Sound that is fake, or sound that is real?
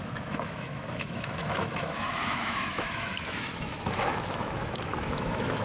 fake